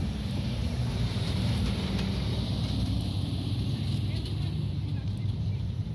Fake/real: fake